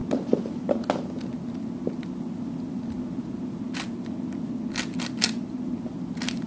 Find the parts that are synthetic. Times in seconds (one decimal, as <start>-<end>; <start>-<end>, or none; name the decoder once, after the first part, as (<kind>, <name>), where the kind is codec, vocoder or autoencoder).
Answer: none